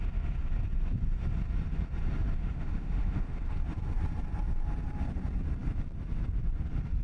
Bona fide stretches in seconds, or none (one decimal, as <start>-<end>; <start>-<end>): 0.0-2.4; 3.3-7.0